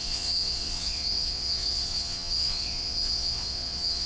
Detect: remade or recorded remade